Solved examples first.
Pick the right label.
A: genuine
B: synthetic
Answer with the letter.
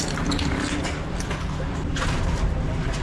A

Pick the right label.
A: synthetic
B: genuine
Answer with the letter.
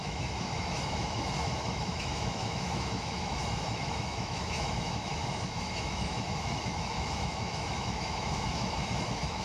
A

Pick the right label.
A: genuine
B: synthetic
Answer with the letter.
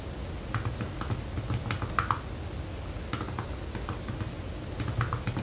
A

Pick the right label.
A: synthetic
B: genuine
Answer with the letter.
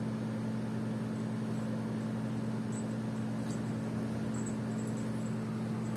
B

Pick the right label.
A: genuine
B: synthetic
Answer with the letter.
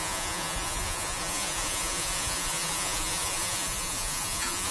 B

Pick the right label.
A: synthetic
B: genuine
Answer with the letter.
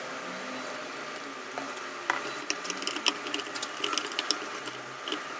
B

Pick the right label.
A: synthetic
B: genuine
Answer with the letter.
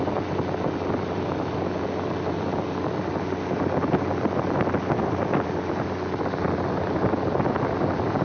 B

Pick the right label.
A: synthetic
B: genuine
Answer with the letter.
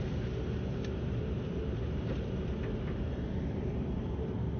A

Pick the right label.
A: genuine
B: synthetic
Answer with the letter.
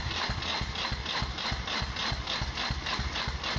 A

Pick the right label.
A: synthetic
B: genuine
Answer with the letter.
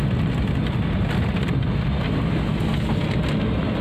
B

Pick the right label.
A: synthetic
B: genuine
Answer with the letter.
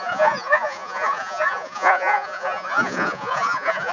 A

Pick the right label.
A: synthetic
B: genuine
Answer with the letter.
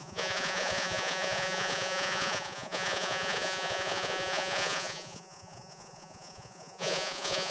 A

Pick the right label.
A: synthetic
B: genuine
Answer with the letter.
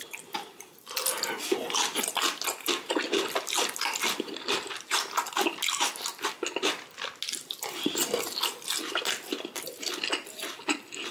B